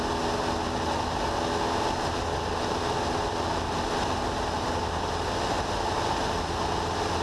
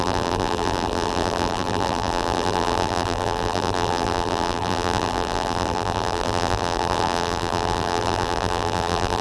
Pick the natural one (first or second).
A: first